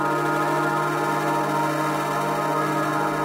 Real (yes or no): yes